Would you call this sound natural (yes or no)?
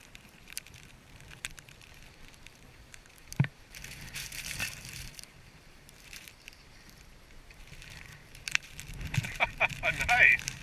no